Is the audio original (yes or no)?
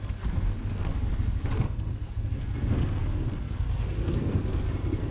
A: no